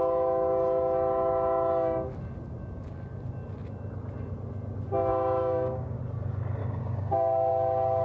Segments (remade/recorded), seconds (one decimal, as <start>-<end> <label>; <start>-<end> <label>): 0.0-5.1 recorded; 5.1-6.0 remade; 6.0-6.6 recorded; 6.6-7.5 remade; 7.5-8.0 recorded